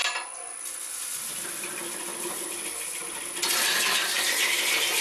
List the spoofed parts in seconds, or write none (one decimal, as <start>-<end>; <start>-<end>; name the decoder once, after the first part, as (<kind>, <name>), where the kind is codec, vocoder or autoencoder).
none